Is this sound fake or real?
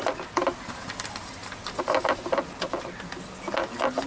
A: real